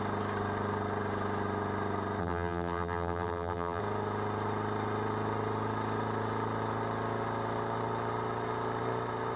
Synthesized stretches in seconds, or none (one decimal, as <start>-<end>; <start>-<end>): 2.2-3.8